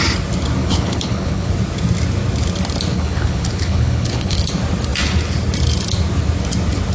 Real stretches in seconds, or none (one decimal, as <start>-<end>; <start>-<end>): 0.0-0.6; 1.5-2.9; 4.4-6.9